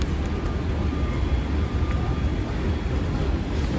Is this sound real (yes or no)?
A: yes